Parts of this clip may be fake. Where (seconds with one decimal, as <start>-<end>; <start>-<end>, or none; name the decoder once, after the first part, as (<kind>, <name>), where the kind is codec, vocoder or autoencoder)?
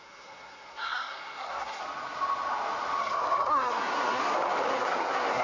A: 0.0-1.8 (codec, SNAC); 3.0-4.2; 4.7-5.4